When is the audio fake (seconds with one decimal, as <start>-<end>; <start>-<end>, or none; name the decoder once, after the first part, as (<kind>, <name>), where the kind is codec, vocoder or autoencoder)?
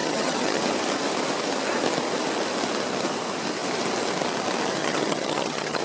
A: 0.0-0.6 (vocoder, HiFi-GAN); 4.8-5.8